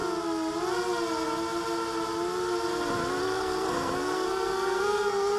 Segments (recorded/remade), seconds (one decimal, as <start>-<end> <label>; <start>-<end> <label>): 0.0-3.2 recorded; 3.2-5.4 remade

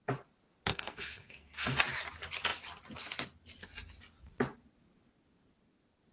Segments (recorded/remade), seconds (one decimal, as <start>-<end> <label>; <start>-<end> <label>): 0.0-0.7 recorded; 0.7-1.8 remade; 1.8-6.1 recorded

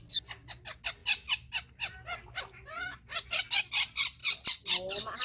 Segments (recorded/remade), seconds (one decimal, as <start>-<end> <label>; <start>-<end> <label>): 0.0-5.2 recorded

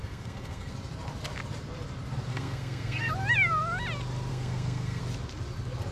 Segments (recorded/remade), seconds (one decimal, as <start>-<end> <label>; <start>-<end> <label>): 0.0-0.7 remade; 0.7-2.3 recorded; 2.3-3.1 remade; 3.1-4.3 recorded; 4.3-5.0 remade; 5.0-5.9 recorded

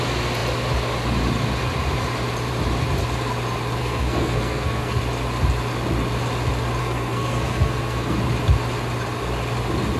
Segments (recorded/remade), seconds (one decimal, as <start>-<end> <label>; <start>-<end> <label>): 0.0-3.8 recorded; 3.8-5.0 remade; 5.0-6.8 recorded; 6.8-8.2 remade; 8.2-10.0 recorded

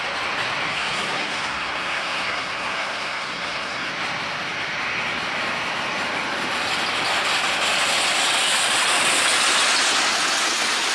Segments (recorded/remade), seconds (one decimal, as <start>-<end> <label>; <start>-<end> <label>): 0.0-0.7 recorded; 0.7-3.9 remade; 3.9-10.9 recorded

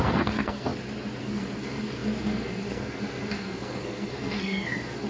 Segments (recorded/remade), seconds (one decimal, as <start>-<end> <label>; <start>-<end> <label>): 0.0-0.7 remade; 0.7-1.2 recorded; 1.2-5.1 remade